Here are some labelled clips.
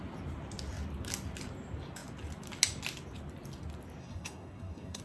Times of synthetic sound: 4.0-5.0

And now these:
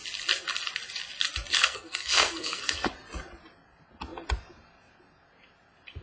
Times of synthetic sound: 1.5-2.9

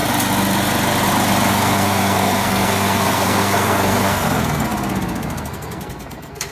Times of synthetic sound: 1.5-6.5